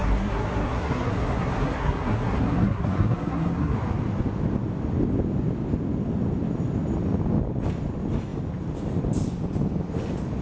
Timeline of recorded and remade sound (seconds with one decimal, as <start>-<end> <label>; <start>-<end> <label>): 0.0-3.8 remade; 3.8-10.4 recorded